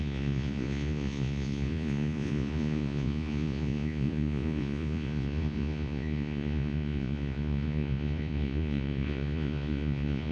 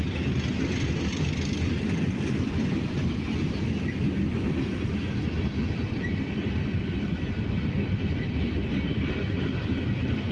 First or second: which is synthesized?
first